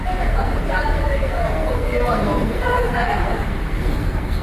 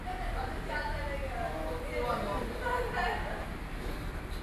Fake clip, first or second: first